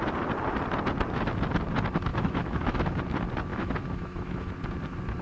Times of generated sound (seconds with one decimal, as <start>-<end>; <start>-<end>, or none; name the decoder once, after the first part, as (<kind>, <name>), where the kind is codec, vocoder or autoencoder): 2.1-3.0 (autoencoder, DAC-VAE); 3.5-4.5